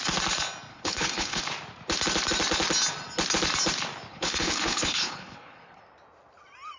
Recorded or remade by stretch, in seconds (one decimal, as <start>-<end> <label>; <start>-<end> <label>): 0.0-0.7 recorded; 0.7-1.4 remade; 1.4-4.1 recorded; 4.1-5.8 remade; 5.8-6.8 recorded